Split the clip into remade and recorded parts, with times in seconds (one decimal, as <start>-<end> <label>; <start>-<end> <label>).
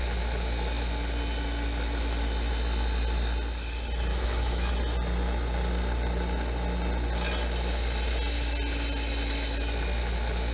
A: 0.0-4.1 recorded; 4.1-4.7 remade; 4.7-10.5 recorded